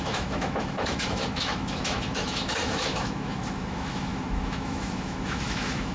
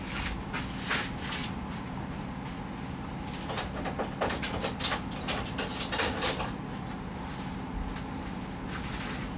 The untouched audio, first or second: second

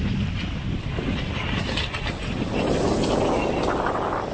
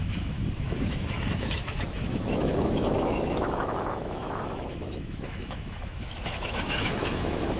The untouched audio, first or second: first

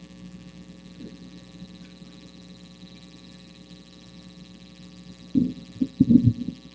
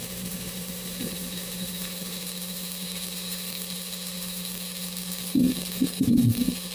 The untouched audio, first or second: first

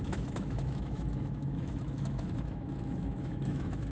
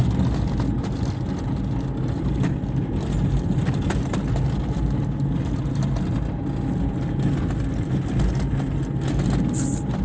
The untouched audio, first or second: second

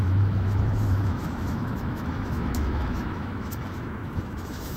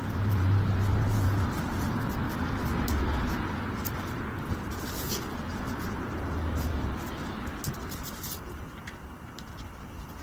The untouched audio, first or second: second